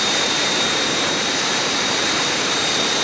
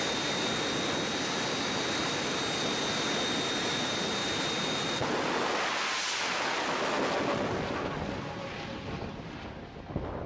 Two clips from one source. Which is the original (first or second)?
second